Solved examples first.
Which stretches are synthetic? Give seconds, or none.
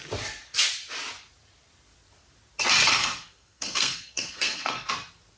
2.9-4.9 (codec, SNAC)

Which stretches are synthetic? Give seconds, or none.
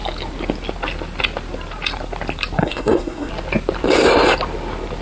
2.6-3.3 (codec, SNAC)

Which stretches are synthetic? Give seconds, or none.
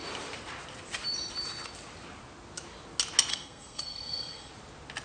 3.3-4.5 (codec, SNAC)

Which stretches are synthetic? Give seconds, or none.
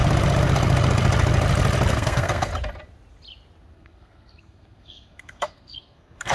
1.9-2.5 (codec, SNAC); 3.7-6.3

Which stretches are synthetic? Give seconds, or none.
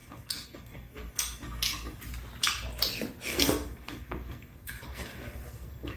0.0-2.0 (codec, SNAC); 3.3-6.0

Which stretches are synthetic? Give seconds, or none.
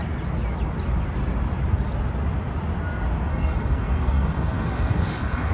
3.3-5.5 (codec, SNAC)